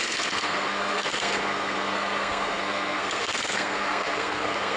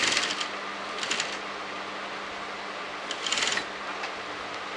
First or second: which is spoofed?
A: first